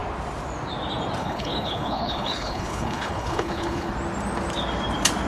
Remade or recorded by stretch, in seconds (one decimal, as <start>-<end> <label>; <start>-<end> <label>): 0.0-1.2 recorded; 1.2-3.9 remade; 3.9-5.3 recorded